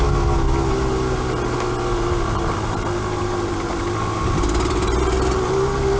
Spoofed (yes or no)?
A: no